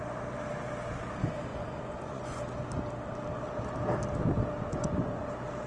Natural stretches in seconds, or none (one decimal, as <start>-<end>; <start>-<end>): 0.0-1.5; 2.4-4.7; 5.3-5.7